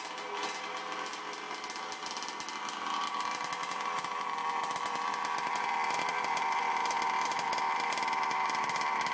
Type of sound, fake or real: real